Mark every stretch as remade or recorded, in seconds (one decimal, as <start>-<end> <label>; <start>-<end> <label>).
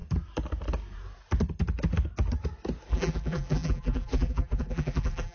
0.0-2.9 recorded; 2.9-5.3 remade